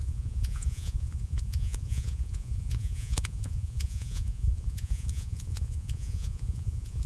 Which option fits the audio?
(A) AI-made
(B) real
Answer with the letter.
A